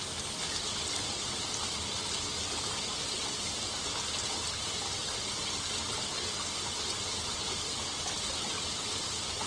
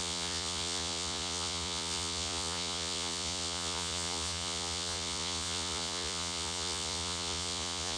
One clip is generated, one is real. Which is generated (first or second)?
second